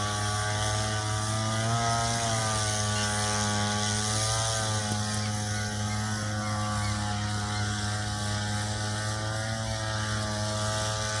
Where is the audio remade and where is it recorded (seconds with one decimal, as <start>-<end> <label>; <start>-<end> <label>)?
0.0-11.2 recorded